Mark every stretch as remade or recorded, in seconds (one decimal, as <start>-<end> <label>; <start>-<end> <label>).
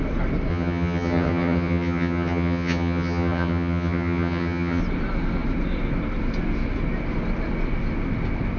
0.0-0.5 recorded; 0.5-4.8 remade; 4.8-8.6 recorded